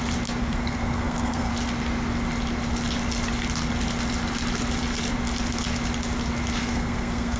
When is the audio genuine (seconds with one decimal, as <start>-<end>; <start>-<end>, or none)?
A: 0.0-0.4; 1.5-6.6